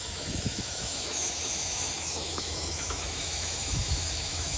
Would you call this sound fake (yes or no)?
yes